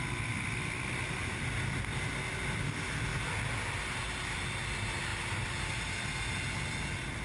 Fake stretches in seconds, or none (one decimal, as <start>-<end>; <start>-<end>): none